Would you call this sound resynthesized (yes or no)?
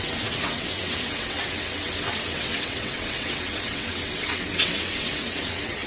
yes